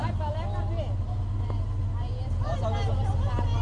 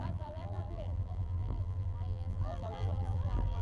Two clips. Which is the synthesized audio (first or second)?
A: second